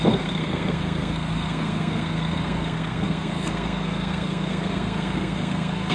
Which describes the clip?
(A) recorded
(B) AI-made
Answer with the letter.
B